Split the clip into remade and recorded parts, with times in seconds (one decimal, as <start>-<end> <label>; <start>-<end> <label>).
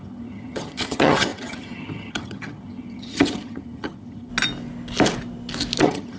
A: 0.0-4.3 remade; 4.3-5.8 recorded; 5.8-6.2 remade